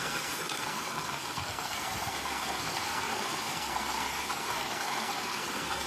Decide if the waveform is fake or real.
fake